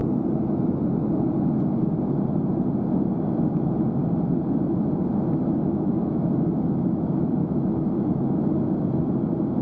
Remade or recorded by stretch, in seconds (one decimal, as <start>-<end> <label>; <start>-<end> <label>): 0.0-5.6 recorded; 5.6-6.3 remade; 6.3-7.4 recorded; 7.4-8.5 remade; 8.5-9.6 recorded